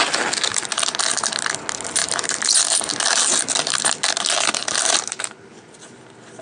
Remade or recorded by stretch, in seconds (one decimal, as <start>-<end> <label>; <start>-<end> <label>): 0.0-2.0 recorded; 2.0-2.9 remade; 2.9-4.6 recorded; 4.6-5.5 remade; 5.5-6.4 recorded